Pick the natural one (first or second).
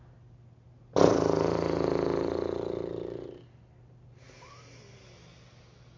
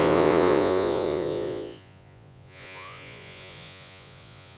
first